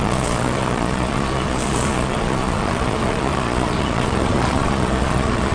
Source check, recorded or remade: remade